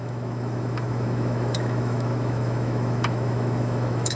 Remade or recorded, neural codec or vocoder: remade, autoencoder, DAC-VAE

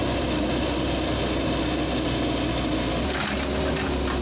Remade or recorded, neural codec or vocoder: recorded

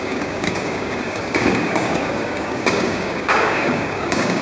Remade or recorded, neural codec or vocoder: remade, codec, DAC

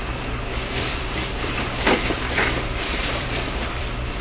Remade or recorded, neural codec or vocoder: remade, vocoder, BigVGAN v2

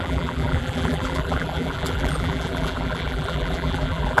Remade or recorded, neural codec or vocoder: remade, vocoder, BigVGAN v2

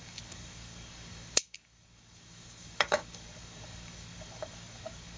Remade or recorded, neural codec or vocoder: remade, codec, DAC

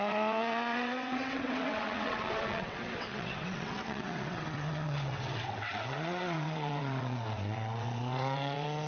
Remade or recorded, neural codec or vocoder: remade, vocoder, WaveNeXt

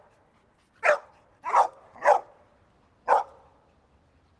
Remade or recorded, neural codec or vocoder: recorded